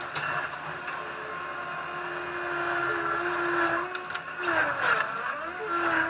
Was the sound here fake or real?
real